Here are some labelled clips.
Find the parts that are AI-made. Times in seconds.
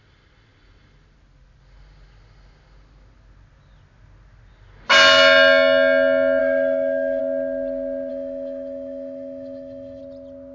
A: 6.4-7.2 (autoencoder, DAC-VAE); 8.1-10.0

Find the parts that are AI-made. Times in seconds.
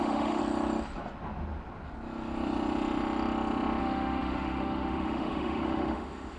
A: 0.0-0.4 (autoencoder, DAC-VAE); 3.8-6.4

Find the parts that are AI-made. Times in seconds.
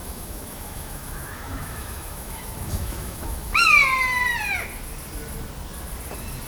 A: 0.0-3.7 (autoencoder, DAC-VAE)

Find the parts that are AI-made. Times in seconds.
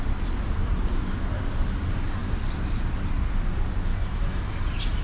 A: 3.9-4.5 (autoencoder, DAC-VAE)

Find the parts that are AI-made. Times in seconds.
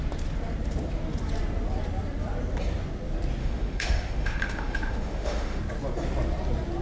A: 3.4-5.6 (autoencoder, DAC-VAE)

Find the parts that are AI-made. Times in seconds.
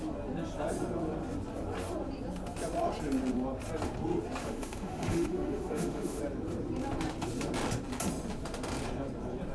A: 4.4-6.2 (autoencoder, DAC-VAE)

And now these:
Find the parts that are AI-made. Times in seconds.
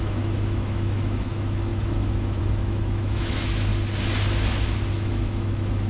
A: 0.0-3.7 (autoencoder, DAC-VAE); 4.9-5.9